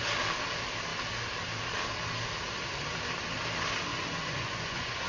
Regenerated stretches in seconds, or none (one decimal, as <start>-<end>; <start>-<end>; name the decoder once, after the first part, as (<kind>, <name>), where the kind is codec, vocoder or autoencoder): 3.9-5.1 (vocoder, Vocos)